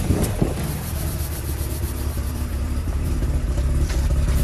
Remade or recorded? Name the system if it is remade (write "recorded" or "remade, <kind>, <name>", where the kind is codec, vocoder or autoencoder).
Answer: remade, vocoder, BigVGAN v2